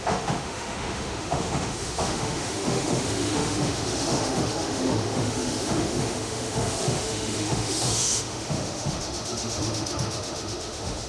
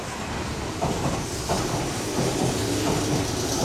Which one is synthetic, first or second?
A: first